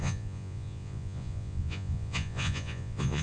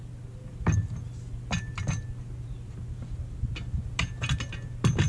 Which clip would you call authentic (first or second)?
second